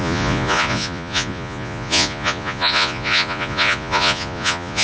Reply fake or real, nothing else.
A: fake